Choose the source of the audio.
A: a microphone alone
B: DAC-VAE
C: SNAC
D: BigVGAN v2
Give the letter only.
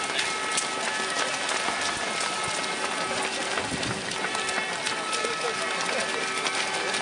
A